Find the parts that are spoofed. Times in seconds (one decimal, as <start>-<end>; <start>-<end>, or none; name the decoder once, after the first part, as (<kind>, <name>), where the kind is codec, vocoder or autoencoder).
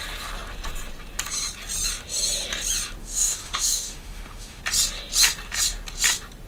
3.0-4.6 (autoencoder, DAC-VAE)